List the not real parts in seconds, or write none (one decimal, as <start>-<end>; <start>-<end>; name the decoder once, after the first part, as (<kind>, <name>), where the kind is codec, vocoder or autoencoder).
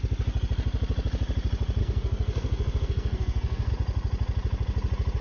1.8-3.7 (codec, SNAC)